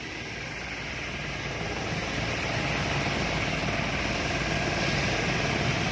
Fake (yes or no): no